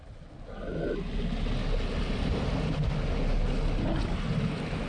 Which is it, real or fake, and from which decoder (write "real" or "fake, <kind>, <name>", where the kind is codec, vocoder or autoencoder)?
real